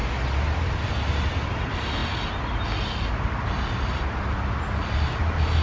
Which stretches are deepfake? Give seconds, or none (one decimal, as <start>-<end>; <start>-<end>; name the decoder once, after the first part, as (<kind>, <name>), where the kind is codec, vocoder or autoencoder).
none